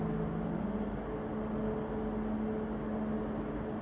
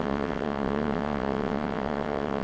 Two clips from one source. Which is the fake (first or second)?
second